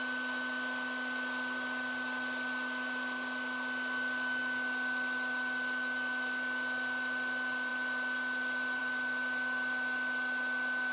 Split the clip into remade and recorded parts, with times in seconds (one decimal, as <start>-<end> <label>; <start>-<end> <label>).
0.0-10.9 recorded